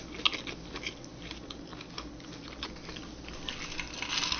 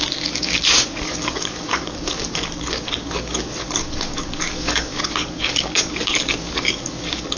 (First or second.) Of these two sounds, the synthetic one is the second